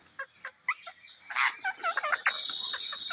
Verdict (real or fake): real